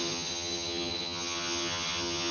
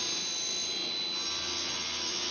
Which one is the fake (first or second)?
first